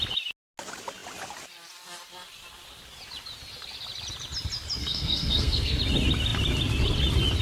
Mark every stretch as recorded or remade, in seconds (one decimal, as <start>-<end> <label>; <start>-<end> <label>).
0.0-4.8 recorded; 4.8-5.8 remade; 5.8-7.4 recorded